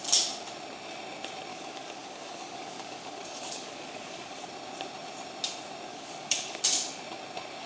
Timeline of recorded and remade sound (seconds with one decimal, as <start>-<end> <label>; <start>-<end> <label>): 0.0-1.5 recorded; 1.5-4.4 remade; 4.4-5.9 recorded; 5.9-6.6 remade; 6.6-7.7 recorded